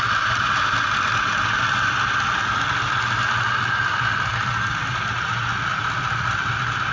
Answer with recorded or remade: recorded